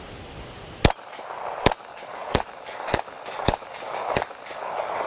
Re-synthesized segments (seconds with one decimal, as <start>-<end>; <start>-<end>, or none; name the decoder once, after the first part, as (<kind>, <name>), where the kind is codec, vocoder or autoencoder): 1.9-5.1 (codec, DAC)